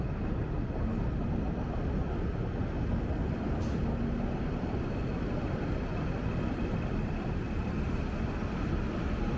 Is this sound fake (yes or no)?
no